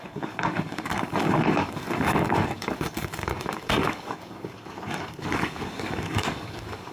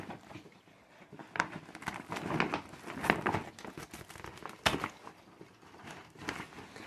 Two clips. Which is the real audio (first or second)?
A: second